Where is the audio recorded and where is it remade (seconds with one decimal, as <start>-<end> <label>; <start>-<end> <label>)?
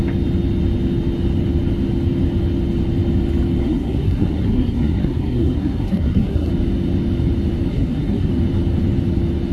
0.0-3.6 recorded; 3.6-6.5 remade; 6.5-7.7 recorded; 7.7-8.3 remade; 8.3-9.5 recorded